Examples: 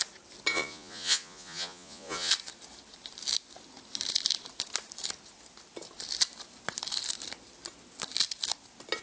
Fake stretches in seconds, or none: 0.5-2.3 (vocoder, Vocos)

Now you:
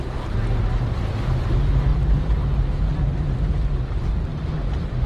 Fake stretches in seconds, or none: 1.9-2.8 (vocoder, BigVGAN v2); 4.3-5.1

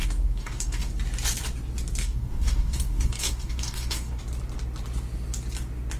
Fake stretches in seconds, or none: 0.0-0.9 (codec, DAC); 2.0-4.2

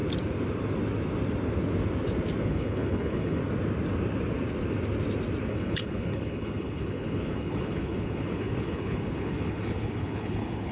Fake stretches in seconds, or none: 2.4-3.4 (codec, HILCodec); 5.5-10.7

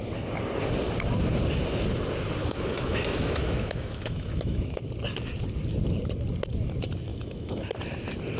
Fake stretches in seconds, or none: 2.4-4.8 (autoencoder, DAC-VAE); 7.1-7.6

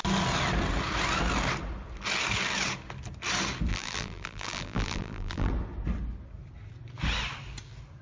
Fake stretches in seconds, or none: 3.7-5.5 (vocoder, BigVGAN v2)

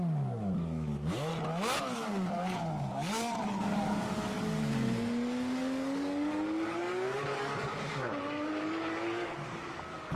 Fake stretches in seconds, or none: 0.0-1.3 (codec, DAC); 1.8-10.2